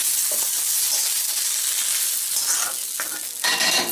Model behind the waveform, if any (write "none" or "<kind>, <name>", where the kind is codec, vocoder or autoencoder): none